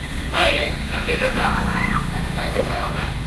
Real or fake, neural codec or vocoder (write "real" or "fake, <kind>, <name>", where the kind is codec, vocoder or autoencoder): fake, autoencoder, DAC-VAE